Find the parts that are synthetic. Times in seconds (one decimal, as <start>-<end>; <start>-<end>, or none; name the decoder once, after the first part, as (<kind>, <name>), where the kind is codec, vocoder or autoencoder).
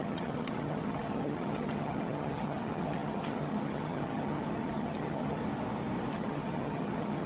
0.0-5.4 (vocoder, HiFi-GAN); 6.1-7.3